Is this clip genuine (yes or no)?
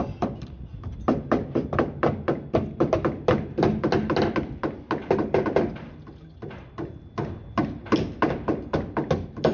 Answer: yes